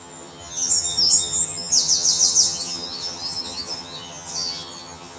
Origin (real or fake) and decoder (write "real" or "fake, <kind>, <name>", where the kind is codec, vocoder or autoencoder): fake, vocoder, HiFi-GAN